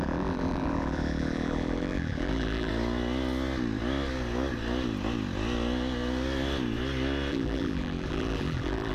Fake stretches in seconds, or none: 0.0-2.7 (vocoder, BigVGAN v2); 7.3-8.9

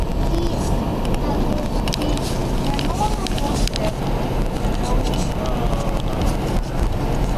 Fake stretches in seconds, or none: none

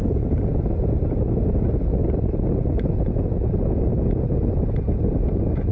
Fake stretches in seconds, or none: 0.0-0.5 (vocoder, BigVGAN v2); 2.5-3.1; 4.1-4.6; 5.2-5.7